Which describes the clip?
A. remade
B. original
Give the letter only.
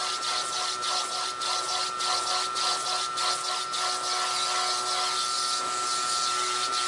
B